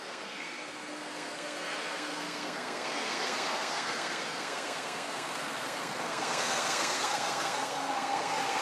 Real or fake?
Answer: fake